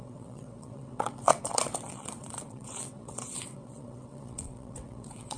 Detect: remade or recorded remade